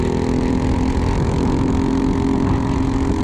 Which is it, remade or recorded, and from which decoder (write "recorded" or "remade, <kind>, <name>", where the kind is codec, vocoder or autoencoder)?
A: recorded